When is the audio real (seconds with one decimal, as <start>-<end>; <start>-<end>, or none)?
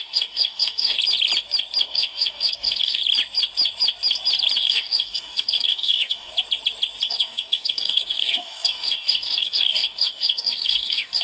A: 1.0-1.8; 3.0-4.6; 6.3-7.1